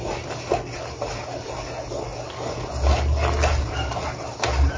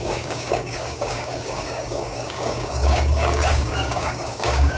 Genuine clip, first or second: first